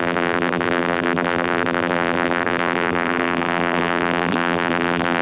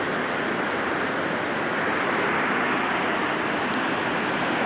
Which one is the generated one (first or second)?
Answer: first